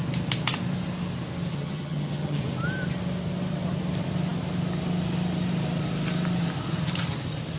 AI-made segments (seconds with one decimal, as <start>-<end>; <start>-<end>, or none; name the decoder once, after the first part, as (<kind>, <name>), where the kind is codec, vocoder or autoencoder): 1.5-2.4 (vocoder, HiFi-GAN)